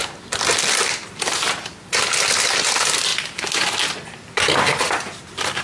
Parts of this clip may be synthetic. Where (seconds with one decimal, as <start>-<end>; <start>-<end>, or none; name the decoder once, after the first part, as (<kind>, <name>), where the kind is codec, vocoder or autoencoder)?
none